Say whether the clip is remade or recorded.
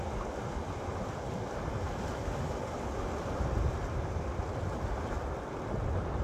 recorded